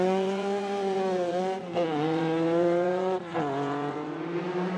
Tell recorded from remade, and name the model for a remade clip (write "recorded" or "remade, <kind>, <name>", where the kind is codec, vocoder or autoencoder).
remade, vocoder, Vocos